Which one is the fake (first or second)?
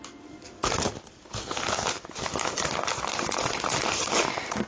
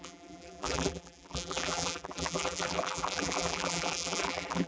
second